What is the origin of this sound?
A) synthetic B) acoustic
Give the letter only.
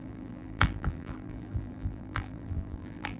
A